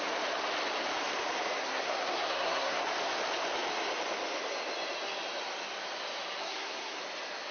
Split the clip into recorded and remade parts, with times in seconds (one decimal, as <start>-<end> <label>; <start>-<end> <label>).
0.0-1.6 recorded; 1.6-2.8 remade; 2.8-6.4 recorded; 6.4-7.0 remade; 7.0-7.5 recorded